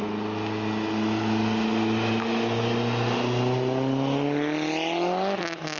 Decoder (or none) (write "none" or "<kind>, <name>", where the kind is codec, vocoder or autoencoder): none